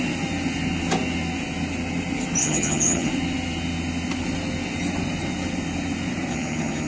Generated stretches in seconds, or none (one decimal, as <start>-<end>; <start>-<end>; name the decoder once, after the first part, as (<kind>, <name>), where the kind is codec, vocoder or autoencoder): 2.4-3.1 (vocoder, HiFi-GAN); 6.3-6.9